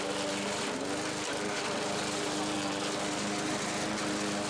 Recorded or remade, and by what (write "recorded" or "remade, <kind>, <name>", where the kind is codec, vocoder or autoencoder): recorded